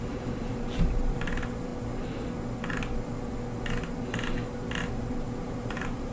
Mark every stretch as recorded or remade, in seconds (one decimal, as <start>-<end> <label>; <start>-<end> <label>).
0.0-1.7 remade; 1.7-5.4 recorded; 5.4-6.1 remade